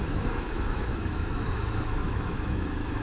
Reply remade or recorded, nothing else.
remade